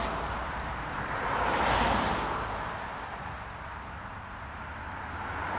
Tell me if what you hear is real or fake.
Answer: real